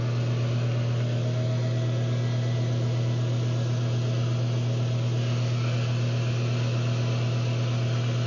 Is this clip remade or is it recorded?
recorded